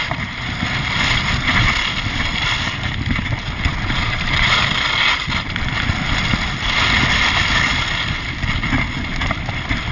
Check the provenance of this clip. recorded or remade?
recorded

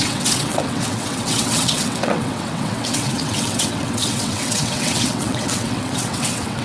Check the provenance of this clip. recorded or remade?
remade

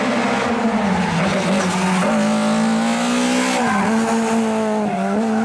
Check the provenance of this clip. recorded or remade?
recorded